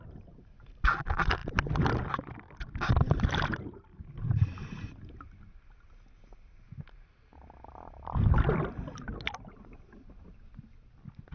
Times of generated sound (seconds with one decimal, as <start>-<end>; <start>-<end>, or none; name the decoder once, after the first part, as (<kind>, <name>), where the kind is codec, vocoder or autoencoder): none